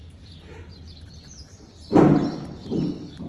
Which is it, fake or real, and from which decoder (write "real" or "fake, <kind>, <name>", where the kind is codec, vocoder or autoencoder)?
fake, vocoder, BigVGAN v2